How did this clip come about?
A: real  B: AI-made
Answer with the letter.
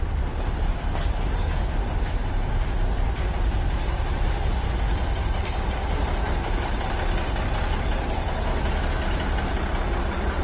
B